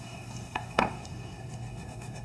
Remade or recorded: remade